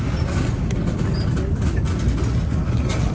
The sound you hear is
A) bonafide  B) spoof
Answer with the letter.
A